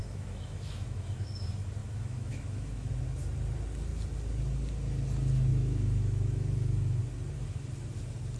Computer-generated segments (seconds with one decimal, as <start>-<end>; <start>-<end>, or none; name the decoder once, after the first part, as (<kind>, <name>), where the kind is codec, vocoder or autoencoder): 0.0-1.4 (autoencoder, DAC-VAE); 1.8-2.9; 5.5-7.0